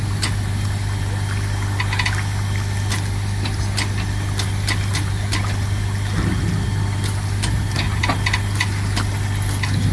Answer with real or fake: real